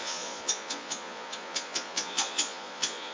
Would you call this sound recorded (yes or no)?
no